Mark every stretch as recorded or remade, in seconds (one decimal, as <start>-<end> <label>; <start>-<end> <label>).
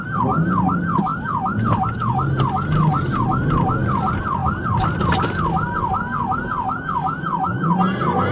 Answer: 0.0-8.3 recorded